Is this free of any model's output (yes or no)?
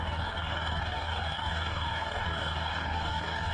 no